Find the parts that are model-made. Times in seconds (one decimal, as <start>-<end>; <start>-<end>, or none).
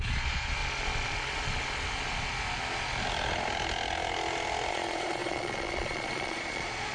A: 0.0-0.6; 4.7-6.9